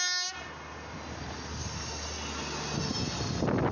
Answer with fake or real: real